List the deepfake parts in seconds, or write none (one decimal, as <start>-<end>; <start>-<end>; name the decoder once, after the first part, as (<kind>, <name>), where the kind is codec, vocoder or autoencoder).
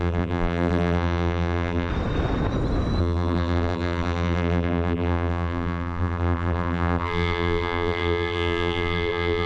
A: 0.0-1.9 (vocoder, BigVGAN v2); 3.0-9.5